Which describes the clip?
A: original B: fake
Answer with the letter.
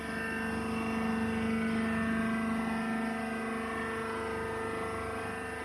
A